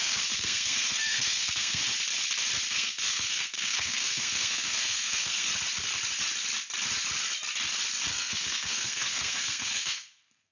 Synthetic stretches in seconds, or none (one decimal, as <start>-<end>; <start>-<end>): 0.0-1.8; 2.7-5.5; 8.1-10.5